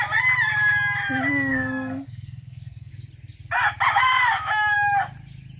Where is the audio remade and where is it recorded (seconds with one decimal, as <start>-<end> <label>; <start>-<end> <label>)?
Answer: 0.0-1.5 recorded; 1.5-2.9 remade; 2.9-5.6 recorded